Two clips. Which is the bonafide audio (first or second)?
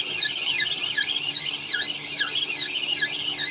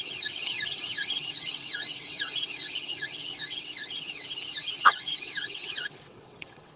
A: first